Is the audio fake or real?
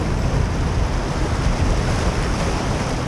real